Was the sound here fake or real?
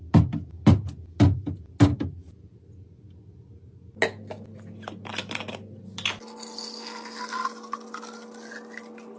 real